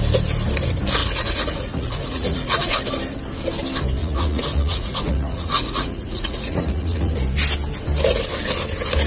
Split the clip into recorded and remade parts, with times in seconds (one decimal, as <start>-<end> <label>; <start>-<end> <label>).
0.0-1.0 recorded; 1.0-2.8 remade; 2.8-4.0 recorded; 4.0-7.1 remade; 7.1-9.1 recorded